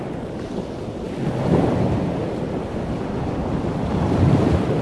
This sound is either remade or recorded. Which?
recorded